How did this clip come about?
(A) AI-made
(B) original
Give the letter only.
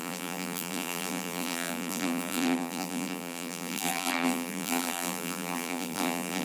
A